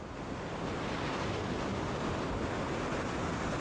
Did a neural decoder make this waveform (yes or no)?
no